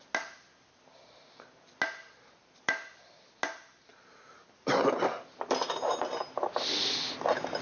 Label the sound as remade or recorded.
recorded